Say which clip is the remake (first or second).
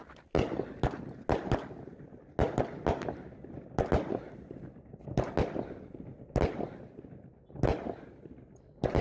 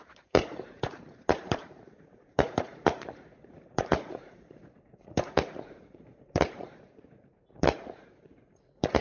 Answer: second